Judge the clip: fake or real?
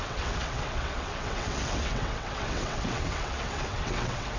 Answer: fake